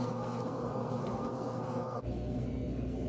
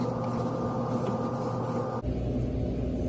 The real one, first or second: second